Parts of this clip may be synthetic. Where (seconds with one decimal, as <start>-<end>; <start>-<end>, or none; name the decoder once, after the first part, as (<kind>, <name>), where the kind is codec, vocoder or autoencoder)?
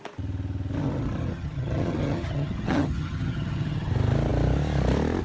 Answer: 0.8-3.9 (vocoder, HiFi-GAN)